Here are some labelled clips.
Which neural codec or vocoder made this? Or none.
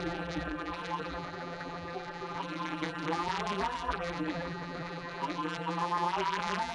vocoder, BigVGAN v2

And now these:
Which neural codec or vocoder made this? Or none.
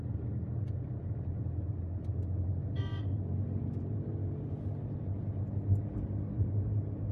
none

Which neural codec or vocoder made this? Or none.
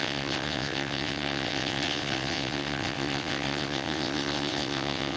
vocoder, WaveNeXt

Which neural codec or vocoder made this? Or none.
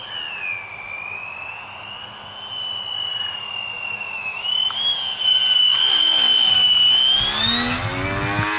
none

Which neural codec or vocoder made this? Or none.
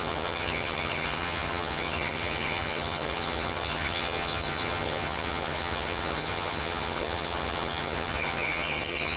vocoder, HiFi-GAN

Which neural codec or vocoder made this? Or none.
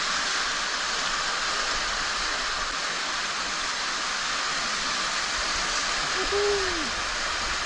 none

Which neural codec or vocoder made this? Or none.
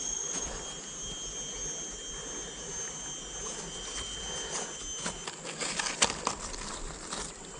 none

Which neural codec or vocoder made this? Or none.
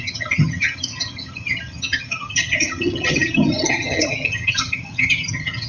vocoder, HiFi-GAN